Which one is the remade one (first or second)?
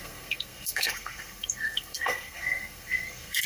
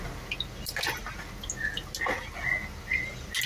first